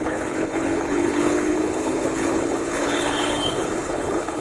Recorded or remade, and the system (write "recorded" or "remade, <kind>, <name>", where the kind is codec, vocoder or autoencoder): remade, codec, HILCodec